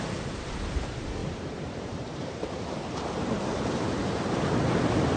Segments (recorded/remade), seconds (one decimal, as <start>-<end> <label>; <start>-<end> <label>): 0.0-1.2 recorded; 1.2-4.3 remade; 4.3-5.2 recorded